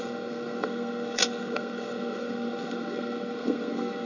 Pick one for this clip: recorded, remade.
remade